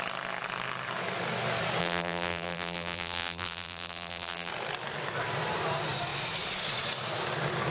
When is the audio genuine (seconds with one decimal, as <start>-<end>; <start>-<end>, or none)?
0.0-1.8; 4.5-7.7